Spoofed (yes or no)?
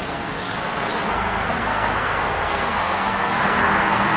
yes